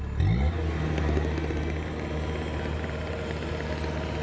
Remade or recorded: recorded